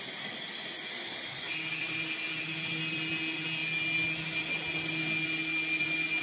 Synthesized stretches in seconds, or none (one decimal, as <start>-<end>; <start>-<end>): none